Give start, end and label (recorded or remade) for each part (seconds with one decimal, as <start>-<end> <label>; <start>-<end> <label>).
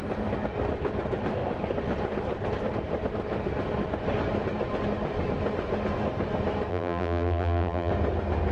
0.0-6.7 recorded; 6.7-7.9 remade; 7.9-8.5 recorded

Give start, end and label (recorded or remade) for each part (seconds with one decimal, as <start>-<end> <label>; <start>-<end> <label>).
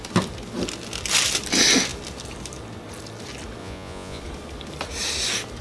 0.0-3.6 recorded; 3.6-4.2 remade; 4.2-5.6 recorded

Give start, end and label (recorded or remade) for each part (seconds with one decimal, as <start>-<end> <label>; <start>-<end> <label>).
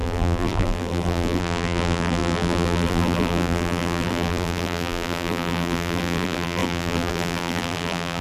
0.0-8.2 remade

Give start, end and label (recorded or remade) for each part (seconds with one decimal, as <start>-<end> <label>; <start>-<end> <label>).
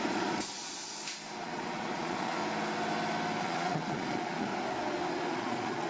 0.0-0.8 remade; 0.8-1.4 recorded; 1.4-2.4 remade; 2.4-3.4 recorded; 3.4-4.5 remade; 4.5-5.3 recorded; 5.3-5.9 remade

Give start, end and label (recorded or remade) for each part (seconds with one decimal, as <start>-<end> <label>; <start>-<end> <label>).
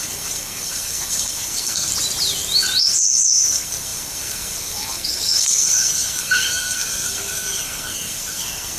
0.0-1.9 remade; 1.9-2.8 recorded; 2.8-8.8 remade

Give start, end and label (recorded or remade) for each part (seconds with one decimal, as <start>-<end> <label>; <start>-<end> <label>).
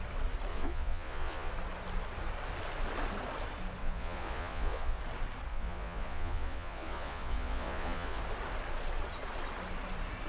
0.0-0.5 recorded; 0.5-1.5 remade; 1.5-3.8 recorded; 3.8-5.0 remade; 5.0-5.5 recorded; 5.5-8.2 remade; 8.2-10.3 recorded